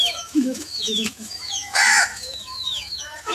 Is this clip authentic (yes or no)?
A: no